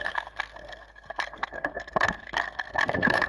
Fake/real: fake